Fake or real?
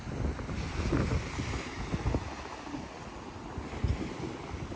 real